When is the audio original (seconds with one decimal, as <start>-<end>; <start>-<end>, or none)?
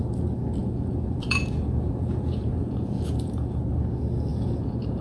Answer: 0.0-0.6; 3.6-4.3